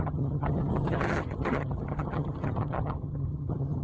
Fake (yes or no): yes